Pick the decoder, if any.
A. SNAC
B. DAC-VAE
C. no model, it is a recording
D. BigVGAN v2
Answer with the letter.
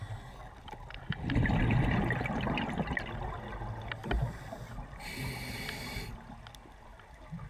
C